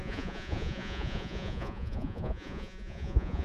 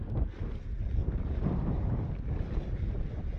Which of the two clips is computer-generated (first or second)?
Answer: first